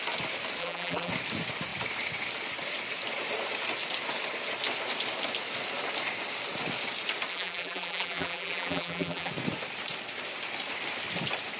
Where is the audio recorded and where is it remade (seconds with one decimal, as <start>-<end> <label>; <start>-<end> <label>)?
0.0-0.6 recorded; 0.6-1.1 remade; 1.1-7.3 recorded; 7.3-9.3 remade; 9.3-11.6 recorded